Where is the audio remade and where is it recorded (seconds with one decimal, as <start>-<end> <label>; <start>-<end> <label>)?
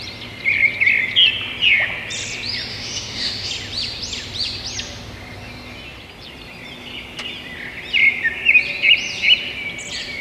0.0-2.7 recorded; 2.7-3.5 remade; 3.5-10.2 recorded